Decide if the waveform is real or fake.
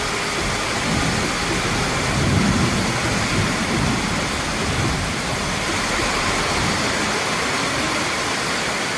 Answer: fake